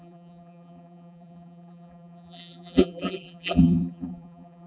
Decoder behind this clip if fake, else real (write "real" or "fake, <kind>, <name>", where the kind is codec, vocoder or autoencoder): fake, vocoder, BigVGAN v2